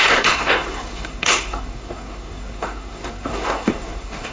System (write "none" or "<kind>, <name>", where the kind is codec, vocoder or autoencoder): codec, SNAC